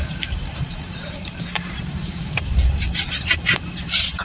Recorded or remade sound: remade